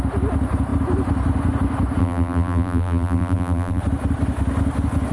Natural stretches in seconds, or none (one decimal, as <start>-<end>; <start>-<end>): 0.0-2.0; 3.8-5.1